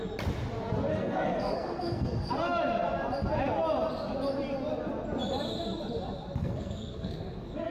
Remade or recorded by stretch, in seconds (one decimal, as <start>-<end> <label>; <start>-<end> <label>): 0.0-0.9 recorded; 0.9-2.3 remade; 2.3-6.4 recorded; 6.4-7.7 remade